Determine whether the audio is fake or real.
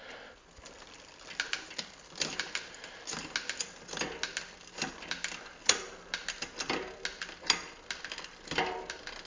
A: real